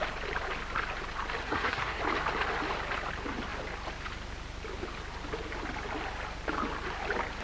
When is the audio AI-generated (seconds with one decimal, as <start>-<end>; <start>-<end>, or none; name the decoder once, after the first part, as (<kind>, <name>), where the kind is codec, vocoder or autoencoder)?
1.4-2.0 (codec, SNAC)